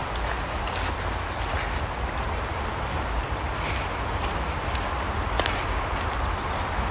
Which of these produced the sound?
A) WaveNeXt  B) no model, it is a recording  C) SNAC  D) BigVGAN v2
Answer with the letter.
B